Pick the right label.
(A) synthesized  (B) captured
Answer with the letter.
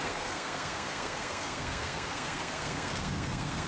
A